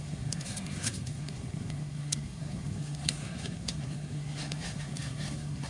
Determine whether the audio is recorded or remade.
remade